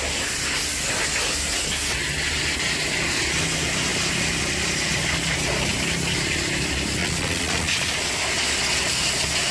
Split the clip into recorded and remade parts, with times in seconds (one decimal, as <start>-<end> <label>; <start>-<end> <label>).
0.0-7.0 recorded; 7.0-7.9 remade; 7.9-9.5 recorded